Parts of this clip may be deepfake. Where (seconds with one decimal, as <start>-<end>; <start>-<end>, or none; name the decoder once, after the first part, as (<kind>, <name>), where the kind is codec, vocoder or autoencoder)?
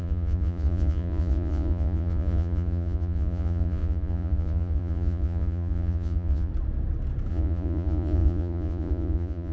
0.0-6.5 (vocoder, Vocos); 7.3-9.5